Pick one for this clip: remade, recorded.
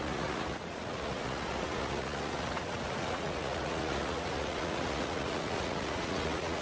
remade